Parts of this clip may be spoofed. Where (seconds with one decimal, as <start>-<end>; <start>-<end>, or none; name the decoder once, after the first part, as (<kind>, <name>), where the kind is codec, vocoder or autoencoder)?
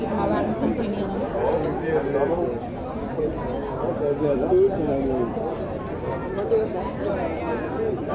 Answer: none